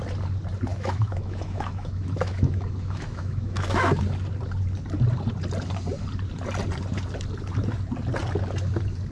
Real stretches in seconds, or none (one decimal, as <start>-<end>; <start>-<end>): 0.0-0.7; 4.0-9.1